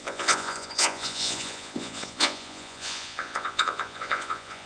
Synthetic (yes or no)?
yes